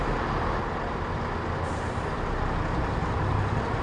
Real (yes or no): yes